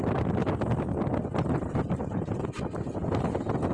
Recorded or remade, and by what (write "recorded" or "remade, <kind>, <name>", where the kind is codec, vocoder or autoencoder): recorded